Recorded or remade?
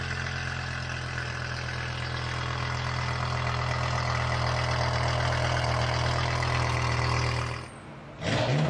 recorded